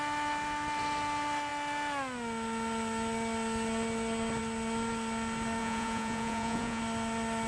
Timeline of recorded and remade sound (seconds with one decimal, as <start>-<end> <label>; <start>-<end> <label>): 0.0-5.6 recorded; 5.6-6.8 remade; 6.8-7.5 recorded